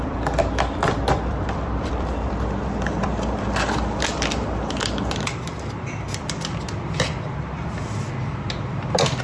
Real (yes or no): no